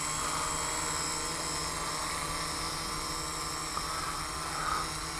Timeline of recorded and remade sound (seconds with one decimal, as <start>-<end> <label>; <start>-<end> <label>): 0.0-5.2 recorded